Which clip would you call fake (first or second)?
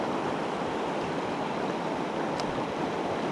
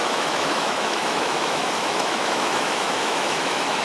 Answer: second